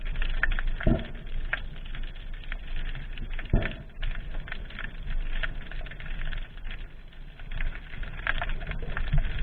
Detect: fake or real real